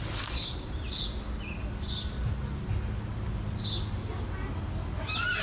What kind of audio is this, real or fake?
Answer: real